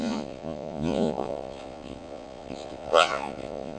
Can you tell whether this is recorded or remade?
remade